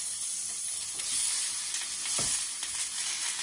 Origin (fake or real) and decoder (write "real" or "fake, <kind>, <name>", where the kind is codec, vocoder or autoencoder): real